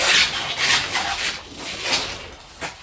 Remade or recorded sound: recorded